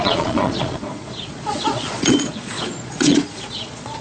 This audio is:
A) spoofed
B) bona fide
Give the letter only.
A